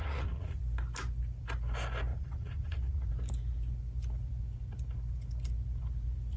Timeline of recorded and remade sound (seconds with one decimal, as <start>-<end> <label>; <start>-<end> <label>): 0.0-0.6 remade; 0.6-2.1 recorded; 2.1-3.1 remade; 3.1-6.4 recorded